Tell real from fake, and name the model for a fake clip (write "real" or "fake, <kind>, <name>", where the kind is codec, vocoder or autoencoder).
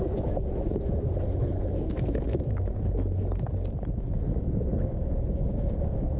fake, autoencoder, DAC-VAE